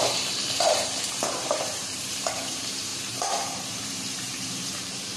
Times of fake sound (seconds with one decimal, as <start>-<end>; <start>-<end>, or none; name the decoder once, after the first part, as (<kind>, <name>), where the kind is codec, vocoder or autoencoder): 0.0-5.2 (vocoder, BigVGAN v2)